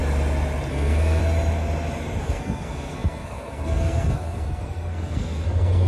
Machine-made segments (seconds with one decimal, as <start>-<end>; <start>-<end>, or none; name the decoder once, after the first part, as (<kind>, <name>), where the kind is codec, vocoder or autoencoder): 0.7-1.2 (codec, SNAC); 2.2-5.9

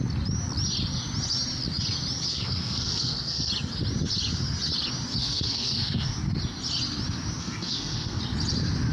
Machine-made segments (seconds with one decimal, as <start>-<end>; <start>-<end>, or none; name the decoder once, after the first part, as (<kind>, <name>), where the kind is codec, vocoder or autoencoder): 2.3-3.5 (codec, SNAC); 5.2-6.1; 7.4-8.2

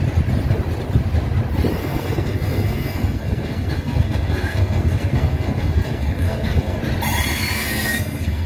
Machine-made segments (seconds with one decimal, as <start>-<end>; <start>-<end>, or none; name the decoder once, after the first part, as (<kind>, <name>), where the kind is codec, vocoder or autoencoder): 1.8-6.8 (codec, SNAC); 7.3-8.5

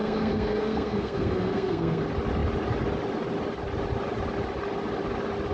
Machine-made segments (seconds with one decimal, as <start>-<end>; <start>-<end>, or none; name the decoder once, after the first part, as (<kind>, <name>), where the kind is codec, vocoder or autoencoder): 0.0-2.0 (codec, SNAC)

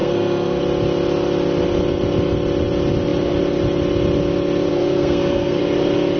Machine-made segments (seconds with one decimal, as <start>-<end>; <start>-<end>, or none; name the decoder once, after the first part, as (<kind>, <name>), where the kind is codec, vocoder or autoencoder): 0.0-0.6 (codec, SNAC); 4.7-5.6

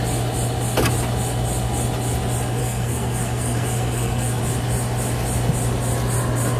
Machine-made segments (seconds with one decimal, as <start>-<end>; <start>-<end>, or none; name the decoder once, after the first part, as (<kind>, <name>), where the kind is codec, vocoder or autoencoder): 2.6-4.4 (codec, SNAC)